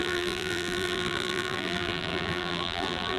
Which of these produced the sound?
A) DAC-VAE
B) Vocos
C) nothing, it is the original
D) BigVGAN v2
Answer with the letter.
D